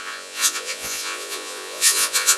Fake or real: fake